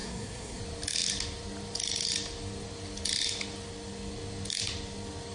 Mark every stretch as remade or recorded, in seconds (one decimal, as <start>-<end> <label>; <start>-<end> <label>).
0.0-0.6 remade; 0.6-5.3 recorded

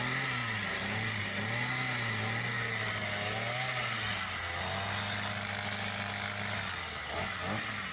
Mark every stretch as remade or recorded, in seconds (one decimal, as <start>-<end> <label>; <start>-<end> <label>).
0.0-7.9 recorded

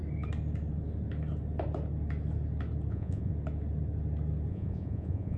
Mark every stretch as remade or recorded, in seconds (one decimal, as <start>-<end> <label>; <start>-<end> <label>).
0.0-2.9 recorded; 2.9-3.3 remade; 3.3-4.5 recorded; 4.5-5.4 remade

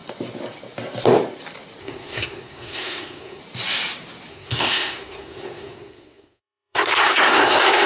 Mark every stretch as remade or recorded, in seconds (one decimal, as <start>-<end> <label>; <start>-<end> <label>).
0.0-1.8 recorded; 1.8-3.4 remade; 3.4-4.3 recorded; 4.3-7.9 remade

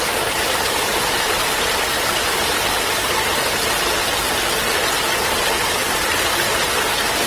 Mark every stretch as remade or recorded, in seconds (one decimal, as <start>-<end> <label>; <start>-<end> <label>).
0.0-0.9 recorded; 0.9-3.4 remade; 3.4-7.3 recorded

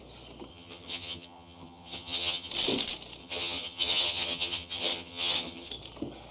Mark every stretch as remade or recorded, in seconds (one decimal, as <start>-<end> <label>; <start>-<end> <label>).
0.0-0.5 recorded; 0.5-2.5 remade; 2.5-3.2 recorded; 3.2-5.7 remade; 5.7-6.3 recorded

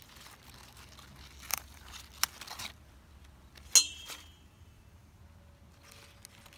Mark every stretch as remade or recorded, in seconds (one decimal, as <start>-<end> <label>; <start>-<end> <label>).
0.0-1.5 recorded; 1.5-2.0 remade; 2.0-3.9 recorded; 3.9-5.2 remade; 5.2-6.6 recorded